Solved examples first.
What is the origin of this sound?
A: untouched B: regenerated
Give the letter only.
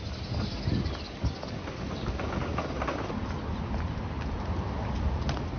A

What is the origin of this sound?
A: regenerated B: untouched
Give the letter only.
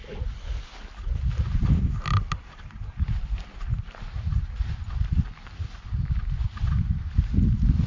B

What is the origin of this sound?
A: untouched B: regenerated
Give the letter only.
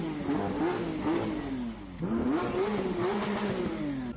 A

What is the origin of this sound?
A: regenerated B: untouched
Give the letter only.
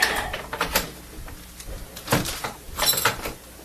A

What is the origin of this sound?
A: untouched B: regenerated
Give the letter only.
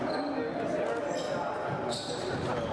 A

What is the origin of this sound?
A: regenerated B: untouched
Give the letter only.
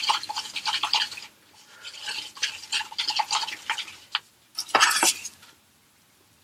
B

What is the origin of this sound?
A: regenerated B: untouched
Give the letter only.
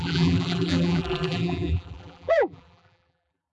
A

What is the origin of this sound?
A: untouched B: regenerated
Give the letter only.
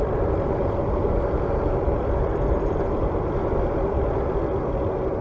A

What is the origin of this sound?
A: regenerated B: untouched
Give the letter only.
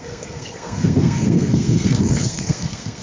A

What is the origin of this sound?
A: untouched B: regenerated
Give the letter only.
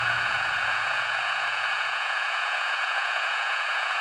B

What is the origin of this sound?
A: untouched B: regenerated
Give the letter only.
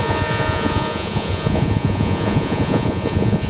B